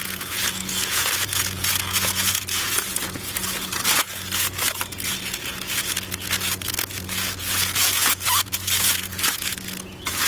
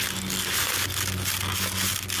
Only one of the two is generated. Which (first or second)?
first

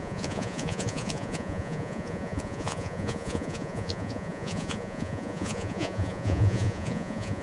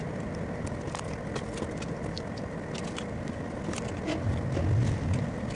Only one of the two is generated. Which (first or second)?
first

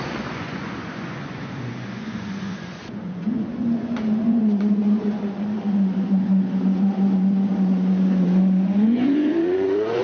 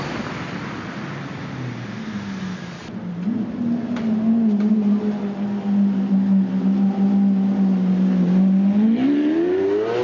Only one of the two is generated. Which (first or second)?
first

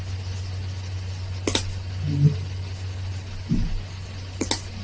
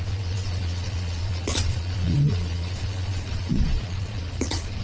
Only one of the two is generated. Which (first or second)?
second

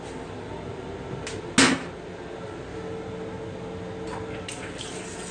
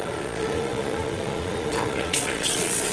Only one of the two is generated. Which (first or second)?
second